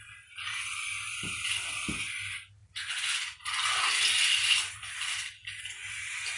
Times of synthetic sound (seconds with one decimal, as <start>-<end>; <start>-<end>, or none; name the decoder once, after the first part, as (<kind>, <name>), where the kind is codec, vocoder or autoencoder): none